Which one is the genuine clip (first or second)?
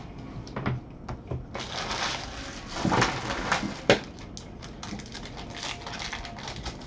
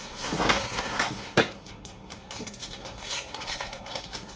first